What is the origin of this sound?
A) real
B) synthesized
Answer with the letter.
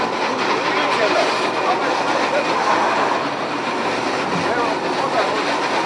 A